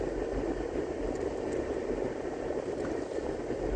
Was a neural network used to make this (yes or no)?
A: no